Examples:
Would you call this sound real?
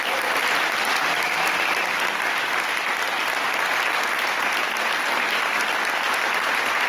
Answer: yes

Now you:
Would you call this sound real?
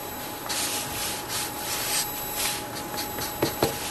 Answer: yes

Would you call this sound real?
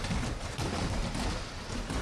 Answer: yes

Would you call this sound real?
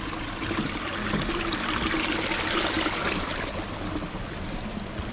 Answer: yes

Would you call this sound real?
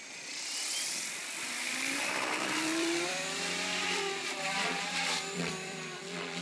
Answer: no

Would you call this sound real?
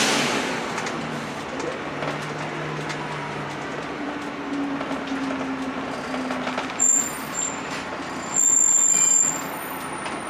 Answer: yes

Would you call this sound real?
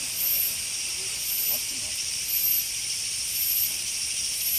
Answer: no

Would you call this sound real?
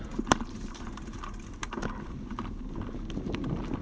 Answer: no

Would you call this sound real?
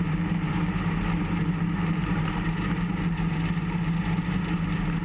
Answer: no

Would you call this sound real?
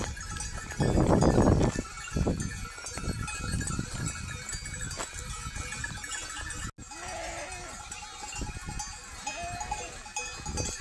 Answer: yes